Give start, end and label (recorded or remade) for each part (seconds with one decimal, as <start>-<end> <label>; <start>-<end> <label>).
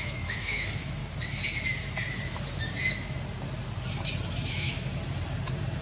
0.0-1.0 remade; 1.0-4.5 recorded; 4.5-4.9 remade; 4.9-5.8 recorded